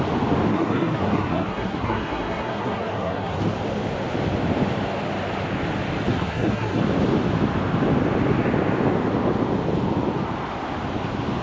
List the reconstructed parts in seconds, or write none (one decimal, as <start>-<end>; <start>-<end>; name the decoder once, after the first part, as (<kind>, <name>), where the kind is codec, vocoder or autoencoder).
0.5-3.4 (codec, SNAC); 6.1-6.8